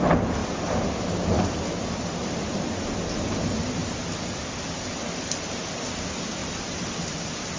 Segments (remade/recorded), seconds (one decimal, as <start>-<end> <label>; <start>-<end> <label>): 0.0-3.8 recorded; 3.8-5.4 remade; 5.4-6.4 recorded; 6.4-7.6 remade